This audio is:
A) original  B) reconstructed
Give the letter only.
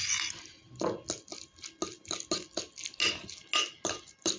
A